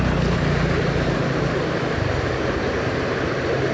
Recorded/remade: recorded